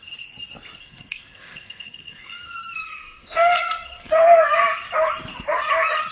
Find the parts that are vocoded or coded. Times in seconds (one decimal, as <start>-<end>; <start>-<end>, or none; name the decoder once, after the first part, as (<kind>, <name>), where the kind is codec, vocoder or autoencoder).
0.8-4.5 (codec, SNAC)